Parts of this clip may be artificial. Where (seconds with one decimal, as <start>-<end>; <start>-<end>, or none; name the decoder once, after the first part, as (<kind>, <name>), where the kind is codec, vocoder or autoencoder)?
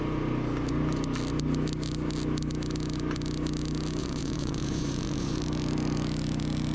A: 4.0-5.4 (vocoder, Vocos)